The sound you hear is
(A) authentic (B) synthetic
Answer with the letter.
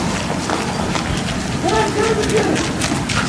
A